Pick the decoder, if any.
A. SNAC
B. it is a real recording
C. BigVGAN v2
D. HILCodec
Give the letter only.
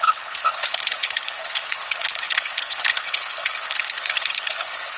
D